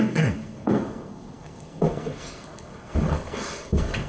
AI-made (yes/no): yes